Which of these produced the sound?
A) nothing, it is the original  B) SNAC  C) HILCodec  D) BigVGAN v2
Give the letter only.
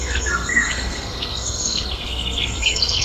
B